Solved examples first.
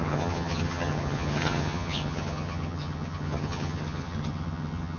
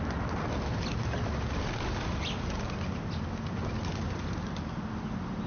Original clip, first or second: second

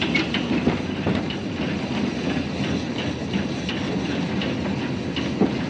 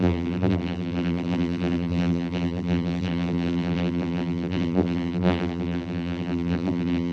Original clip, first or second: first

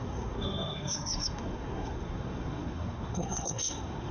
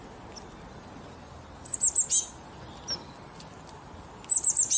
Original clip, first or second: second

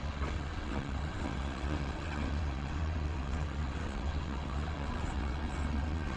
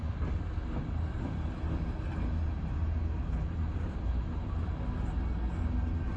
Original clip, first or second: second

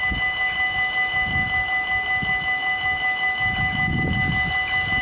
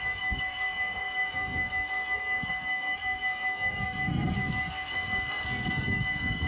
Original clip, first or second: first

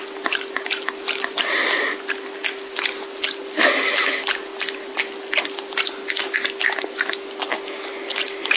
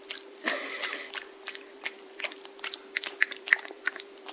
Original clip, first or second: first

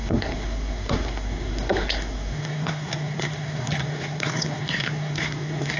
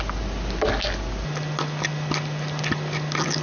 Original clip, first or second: second